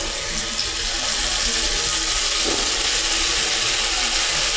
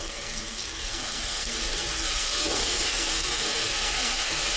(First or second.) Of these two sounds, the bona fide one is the first